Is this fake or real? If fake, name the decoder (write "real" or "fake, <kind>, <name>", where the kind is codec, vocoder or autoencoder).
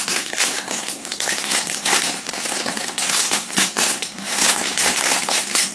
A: fake, codec, SNAC